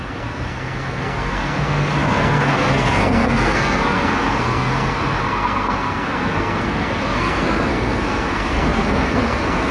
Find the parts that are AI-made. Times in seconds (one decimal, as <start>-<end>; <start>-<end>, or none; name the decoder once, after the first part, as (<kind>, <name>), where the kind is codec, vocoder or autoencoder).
0.0-9.7 (codec, SNAC)